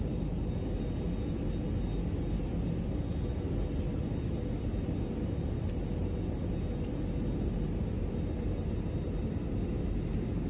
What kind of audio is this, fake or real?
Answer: real